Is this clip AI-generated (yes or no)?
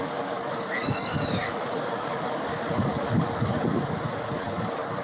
yes